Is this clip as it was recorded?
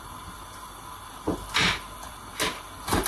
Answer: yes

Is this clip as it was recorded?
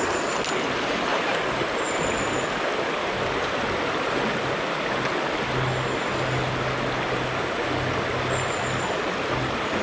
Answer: yes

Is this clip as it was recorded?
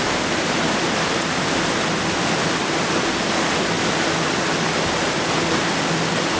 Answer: yes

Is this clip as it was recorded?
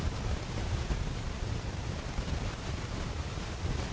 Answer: no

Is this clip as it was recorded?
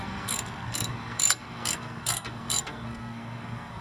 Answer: no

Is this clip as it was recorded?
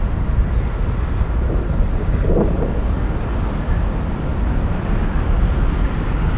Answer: yes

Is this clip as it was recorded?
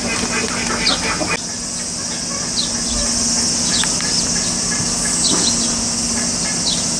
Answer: yes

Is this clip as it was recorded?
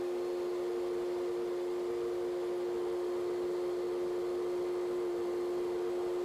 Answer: yes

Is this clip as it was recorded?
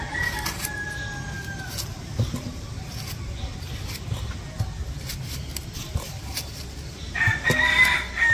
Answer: yes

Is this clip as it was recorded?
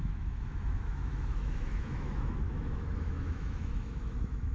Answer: no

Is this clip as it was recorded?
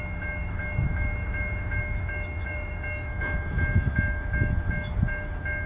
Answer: no